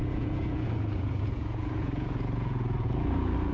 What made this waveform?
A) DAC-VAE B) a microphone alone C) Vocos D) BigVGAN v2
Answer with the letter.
C